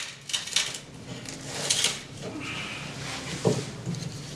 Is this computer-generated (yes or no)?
no